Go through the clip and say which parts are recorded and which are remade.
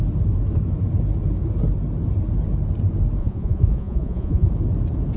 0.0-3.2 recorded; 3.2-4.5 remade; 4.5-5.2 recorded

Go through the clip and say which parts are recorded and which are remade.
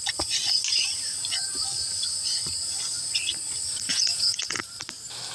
0.0-3.9 recorded; 3.9-4.6 remade; 4.6-5.3 recorded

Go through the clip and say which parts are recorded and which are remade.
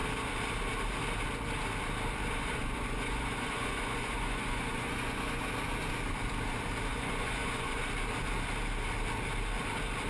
0.0-2.4 recorded; 2.4-5.4 remade; 5.4-6.9 recorded; 6.9-7.8 remade; 7.8-10.1 recorded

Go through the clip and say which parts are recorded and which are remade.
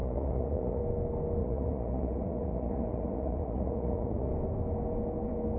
0.0-0.8 remade; 0.8-1.4 recorded; 1.4-4.3 remade; 4.3-5.6 recorded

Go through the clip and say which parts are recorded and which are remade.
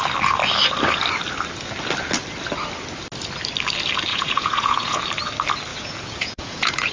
0.0-4.1 recorded; 4.1-5.0 remade; 5.0-5.7 recorded; 5.7-6.9 remade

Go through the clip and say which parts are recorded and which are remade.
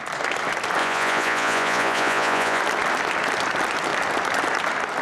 0.0-0.8 recorded; 0.8-2.6 remade; 2.6-5.0 recorded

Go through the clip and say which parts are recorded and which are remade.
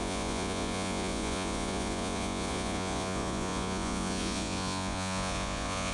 0.0-5.9 remade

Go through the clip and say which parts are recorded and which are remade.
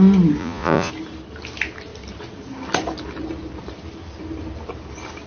0.0-0.4 recorded; 0.4-0.9 remade; 0.9-5.3 recorded